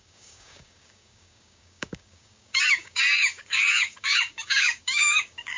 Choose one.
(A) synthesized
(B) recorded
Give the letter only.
A